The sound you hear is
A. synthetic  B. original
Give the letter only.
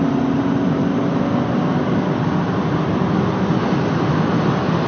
B